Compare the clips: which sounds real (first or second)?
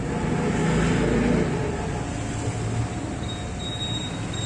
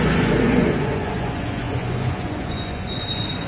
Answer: first